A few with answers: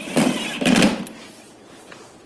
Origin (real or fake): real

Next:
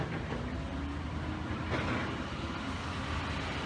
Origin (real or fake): real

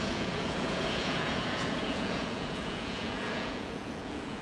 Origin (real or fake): fake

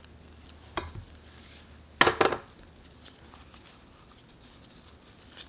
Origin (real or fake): real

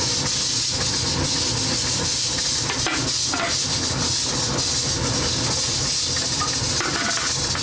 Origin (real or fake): real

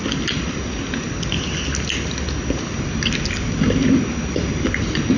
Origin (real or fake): real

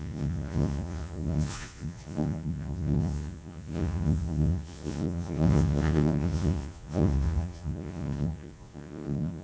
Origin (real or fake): fake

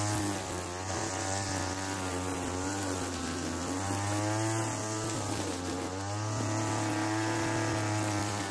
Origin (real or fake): real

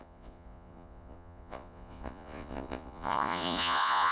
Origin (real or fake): fake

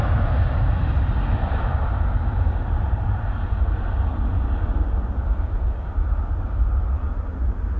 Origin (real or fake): real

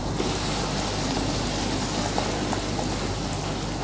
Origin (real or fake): real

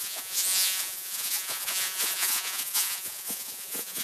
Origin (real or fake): fake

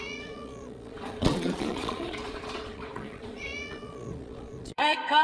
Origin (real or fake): fake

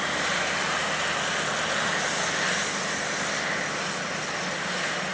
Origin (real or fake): real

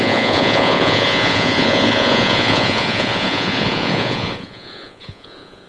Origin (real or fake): fake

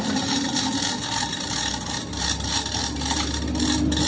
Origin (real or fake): real